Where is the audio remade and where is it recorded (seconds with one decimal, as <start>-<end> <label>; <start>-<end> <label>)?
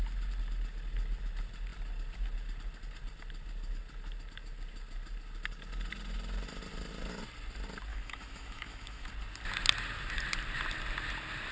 0.0-7.9 recorded; 7.9-9.1 remade; 9.1-11.5 recorded